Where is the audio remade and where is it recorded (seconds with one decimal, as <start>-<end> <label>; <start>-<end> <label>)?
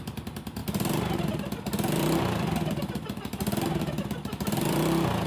0.0-5.3 recorded